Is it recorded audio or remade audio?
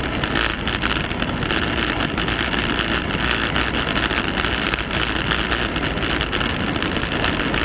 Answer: recorded